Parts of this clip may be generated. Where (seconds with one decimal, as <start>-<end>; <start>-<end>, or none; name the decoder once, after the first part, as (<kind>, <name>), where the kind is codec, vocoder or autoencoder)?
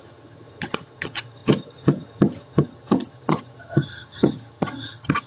0.0-5.3 (vocoder, HiFi-GAN)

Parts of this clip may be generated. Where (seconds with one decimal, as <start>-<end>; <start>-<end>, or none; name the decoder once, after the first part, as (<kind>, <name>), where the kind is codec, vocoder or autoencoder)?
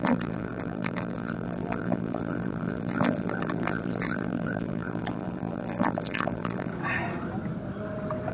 0.0-6.7 (vocoder, BigVGAN v2)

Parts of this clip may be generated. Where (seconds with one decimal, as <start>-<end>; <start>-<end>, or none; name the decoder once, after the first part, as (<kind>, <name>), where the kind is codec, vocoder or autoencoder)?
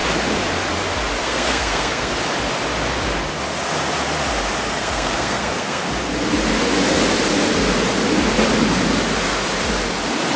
1.2-2.1 (codec, SNAC); 4.7-5.8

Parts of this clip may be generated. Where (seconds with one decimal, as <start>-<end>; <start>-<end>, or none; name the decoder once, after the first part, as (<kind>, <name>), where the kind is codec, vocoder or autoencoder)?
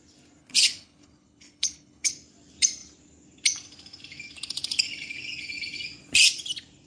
0.4-2.1 (codec, HILCodec)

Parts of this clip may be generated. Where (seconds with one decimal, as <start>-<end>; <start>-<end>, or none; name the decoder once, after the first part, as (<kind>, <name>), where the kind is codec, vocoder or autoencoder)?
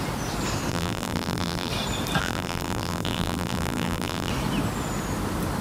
0.7-1.7 (vocoder, BigVGAN v2); 2.2-4.3